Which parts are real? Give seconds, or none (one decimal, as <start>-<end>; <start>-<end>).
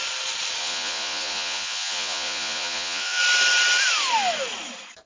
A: 0.0-0.6; 3.2-5.1